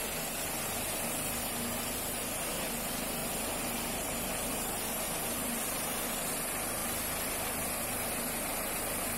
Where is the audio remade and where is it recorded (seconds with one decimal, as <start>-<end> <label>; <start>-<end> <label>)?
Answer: 0.0-3.2 recorded; 3.2-6.3 remade; 6.3-9.2 recorded